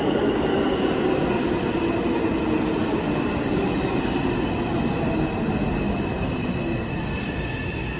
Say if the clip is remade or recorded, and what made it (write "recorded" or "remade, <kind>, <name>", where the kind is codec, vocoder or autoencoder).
recorded